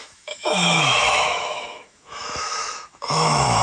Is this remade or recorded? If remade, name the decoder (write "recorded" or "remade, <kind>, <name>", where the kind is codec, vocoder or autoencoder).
remade, autoencoder, DAC-VAE